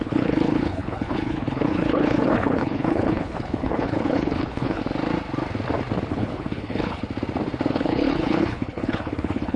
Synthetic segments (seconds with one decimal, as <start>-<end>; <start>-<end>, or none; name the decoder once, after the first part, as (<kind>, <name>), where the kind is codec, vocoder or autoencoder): 0.0-4.8 (codec, HILCodec); 6.1-7.0; 7.7-9.6